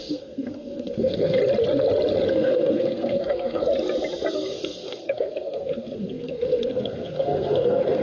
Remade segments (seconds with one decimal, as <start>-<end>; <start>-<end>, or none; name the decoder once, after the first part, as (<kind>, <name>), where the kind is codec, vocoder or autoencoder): 0.0-1.4 (codec, SNAC); 2.3-3.7; 4.3-8.0